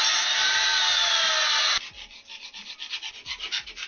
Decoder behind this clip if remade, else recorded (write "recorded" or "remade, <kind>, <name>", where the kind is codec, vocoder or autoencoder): recorded